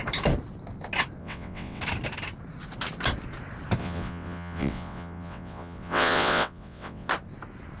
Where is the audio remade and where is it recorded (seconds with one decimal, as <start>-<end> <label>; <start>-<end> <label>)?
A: 0.0-1.2 recorded; 1.2-1.8 remade; 1.8-3.8 recorded; 3.8-7.1 remade; 7.1-7.8 recorded